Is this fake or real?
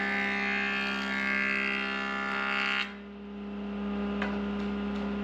real